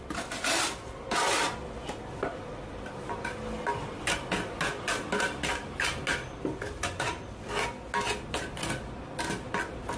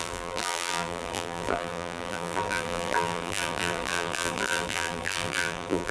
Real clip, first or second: first